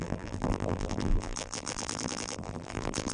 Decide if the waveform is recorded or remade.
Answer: remade